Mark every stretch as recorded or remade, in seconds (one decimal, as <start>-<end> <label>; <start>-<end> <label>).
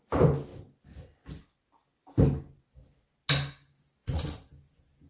0.0-4.0 recorded; 4.0-4.5 remade; 4.5-5.1 recorded